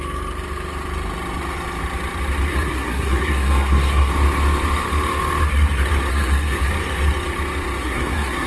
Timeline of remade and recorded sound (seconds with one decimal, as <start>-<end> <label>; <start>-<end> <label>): 0.0-2.5 recorded; 2.5-4.1 remade; 4.1-6.1 recorded; 6.1-6.7 remade; 6.7-7.8 recorded; 7.8-8.5 remade